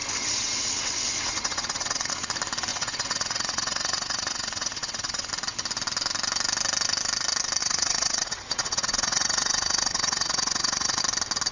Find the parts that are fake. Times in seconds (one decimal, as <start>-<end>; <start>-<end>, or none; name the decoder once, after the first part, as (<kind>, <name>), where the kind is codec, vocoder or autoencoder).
0.0-2.1 (vocoder, WaveNeXt); 2.7-5.3; 7.6-11.0